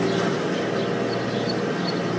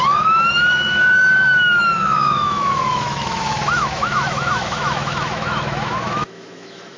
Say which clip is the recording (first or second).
first